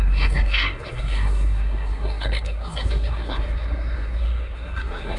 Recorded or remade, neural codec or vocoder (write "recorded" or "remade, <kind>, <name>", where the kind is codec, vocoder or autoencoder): remade, codec, SNAC